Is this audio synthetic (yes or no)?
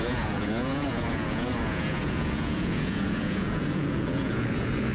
yes